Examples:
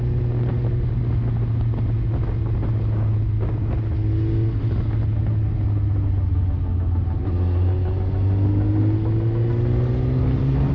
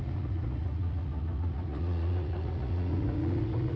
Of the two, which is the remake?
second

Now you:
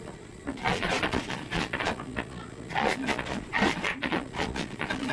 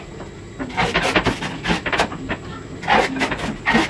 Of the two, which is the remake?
first